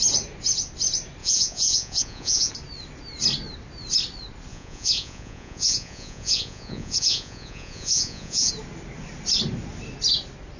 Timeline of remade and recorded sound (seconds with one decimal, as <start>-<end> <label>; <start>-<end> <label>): 0.0-1.2 recorded; 1.2-2.5 remade; 2.5-4.5 recorded; 4.5-8.5 remade; 8.5-10.6 recorded